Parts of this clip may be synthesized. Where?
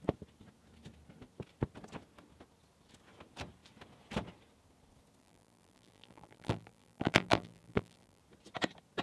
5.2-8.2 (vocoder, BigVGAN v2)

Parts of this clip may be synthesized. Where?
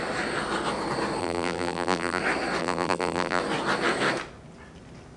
1.2-2.2 (vocoder, BigVGAN v2); 2.6-3.4